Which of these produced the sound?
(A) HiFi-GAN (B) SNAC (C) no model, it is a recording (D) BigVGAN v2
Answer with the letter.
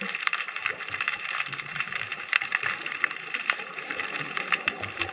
D